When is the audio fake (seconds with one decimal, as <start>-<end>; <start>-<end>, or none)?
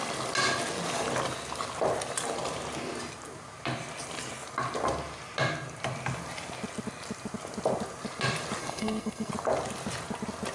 8.6-9.3